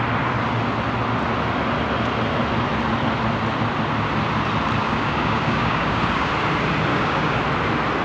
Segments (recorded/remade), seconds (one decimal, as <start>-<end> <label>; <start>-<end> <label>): 0.0-4.8 recorded; 4.8-6.3 remade; 6.3-6.9 recorded; 6.9-7.4 remade; 7.4-8.0 recorded